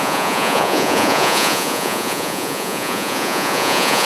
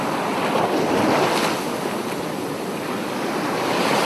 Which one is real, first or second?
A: second